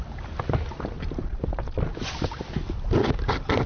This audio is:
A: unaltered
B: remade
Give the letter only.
A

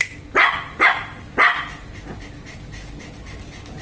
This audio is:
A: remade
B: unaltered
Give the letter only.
B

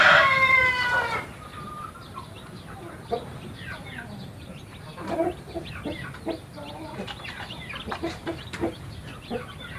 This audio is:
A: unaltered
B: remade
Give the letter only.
B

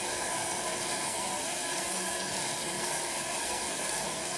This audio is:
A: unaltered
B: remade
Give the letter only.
B